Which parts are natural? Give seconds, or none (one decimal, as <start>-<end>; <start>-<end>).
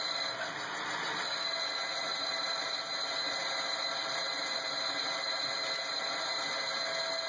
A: 0.0-2.1; 6.5-7.3